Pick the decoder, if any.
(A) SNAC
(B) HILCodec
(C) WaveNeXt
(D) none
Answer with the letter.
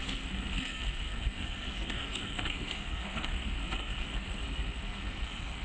A